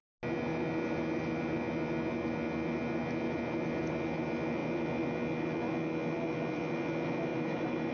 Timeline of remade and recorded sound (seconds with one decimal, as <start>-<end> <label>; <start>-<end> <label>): 0.0-7.3 recorded; 7.3-7.9 remade